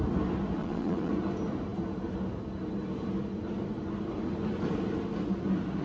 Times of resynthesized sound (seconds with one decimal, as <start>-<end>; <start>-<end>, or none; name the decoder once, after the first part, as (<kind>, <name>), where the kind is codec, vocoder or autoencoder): 0.6-1.1 (vocoder, Vocos)